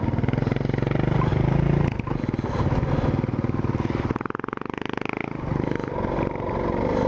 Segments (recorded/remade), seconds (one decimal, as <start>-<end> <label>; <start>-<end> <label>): 0.0-7.1 recorded